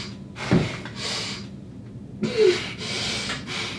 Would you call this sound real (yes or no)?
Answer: yes